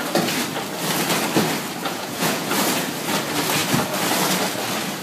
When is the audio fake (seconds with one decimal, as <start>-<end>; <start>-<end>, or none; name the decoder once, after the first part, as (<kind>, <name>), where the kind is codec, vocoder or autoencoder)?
1.8-2.5 (vocoder, Vocos)